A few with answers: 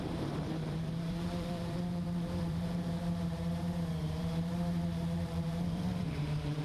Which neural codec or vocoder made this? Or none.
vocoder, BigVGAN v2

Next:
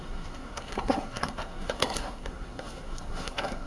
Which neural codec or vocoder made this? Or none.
codec, SNAC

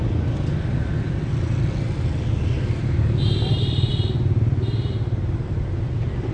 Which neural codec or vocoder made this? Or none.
none